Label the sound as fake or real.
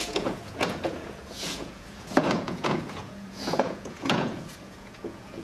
fake